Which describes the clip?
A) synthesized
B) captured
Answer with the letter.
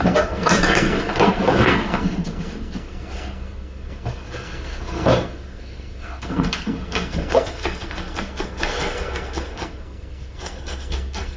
A